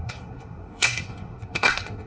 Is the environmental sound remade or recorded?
remade